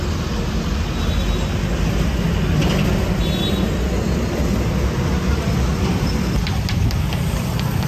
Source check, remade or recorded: recorded